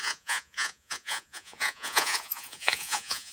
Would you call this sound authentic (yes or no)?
no